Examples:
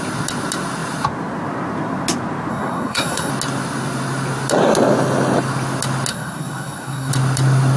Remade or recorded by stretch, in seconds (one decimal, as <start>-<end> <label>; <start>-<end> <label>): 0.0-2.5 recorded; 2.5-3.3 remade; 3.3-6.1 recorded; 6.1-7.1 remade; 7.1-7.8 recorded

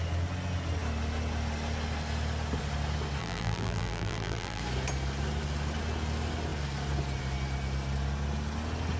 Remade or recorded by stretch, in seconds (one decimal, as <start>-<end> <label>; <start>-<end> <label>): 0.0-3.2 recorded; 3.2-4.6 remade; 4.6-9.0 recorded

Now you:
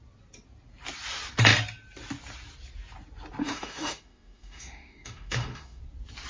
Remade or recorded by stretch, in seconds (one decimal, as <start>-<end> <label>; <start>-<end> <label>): 0.0-3.4 recorded; 3.4-5.8 remade; 5.8-6.3 recorded

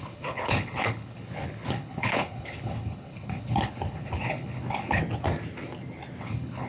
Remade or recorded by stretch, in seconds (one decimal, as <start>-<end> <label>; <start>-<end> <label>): 0.0-5.0 remade; 5.0-6.2 recorded; 6.2-6.7 remade

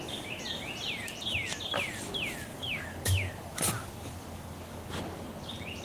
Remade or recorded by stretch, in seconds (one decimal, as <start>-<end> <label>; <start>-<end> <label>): 0.0-2.5 recorded; 2.5-5.0 remade; 5.0-5.8 recorded

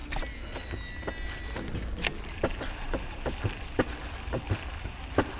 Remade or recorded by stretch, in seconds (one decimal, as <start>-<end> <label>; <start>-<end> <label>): 0.0-5.4 recorded

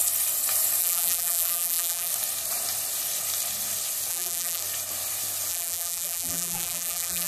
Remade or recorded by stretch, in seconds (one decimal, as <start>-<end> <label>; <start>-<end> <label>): 0.0-0.8 recorded; 0.8-2.1 remade; 2.1-4.1 recorded; 4.1-4.6 remade; 4.6-5.5 recorded; 5.5-7.3 remade